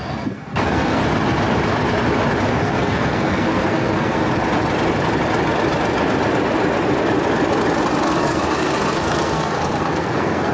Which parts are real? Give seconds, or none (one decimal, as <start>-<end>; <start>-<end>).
1.0-2.5; 4.2-8.0